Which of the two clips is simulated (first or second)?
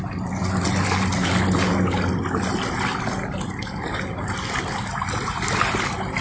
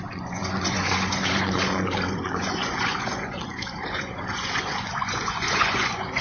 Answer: second